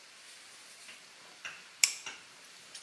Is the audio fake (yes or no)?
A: yes